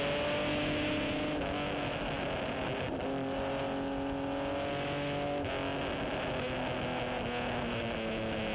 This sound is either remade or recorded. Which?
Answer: recorded